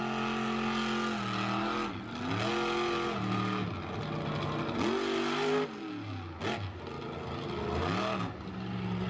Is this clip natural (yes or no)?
yes